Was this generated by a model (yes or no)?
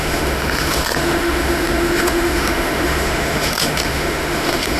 yes